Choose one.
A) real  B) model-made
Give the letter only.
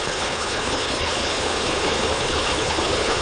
B